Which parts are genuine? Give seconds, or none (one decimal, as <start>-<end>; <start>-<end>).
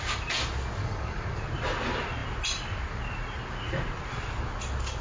0.0-0.8; 1.4-5.0